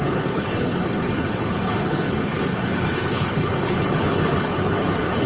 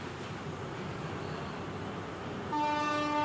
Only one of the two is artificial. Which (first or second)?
first